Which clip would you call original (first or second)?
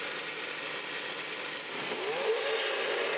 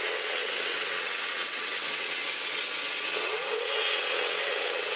first